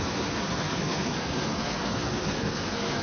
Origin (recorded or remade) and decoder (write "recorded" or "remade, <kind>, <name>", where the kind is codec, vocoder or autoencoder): remade, codec, SNAC